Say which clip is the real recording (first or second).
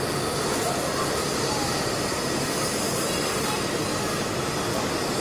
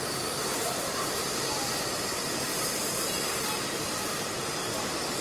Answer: first